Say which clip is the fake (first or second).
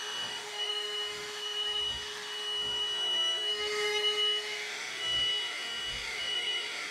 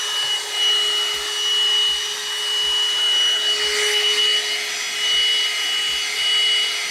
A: first